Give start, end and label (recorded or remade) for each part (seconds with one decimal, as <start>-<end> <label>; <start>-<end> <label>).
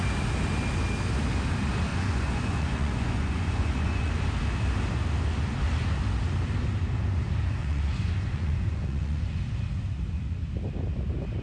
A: 0.0-1.9 recorded; 1.9-4.1 remade; 4.1-7.6 recorded; 7.6-9.4 remade; 9.4-11.4 recorded